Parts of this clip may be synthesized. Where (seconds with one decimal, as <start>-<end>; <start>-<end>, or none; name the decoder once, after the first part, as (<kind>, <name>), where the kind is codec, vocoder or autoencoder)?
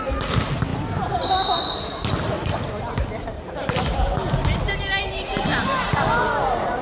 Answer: none